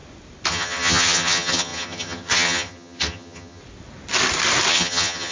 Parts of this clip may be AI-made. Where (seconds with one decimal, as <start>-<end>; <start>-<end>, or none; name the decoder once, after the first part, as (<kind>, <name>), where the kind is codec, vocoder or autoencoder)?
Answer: 0.5-3.6 (vocoder, HiFi-GAN); 4.7-5.3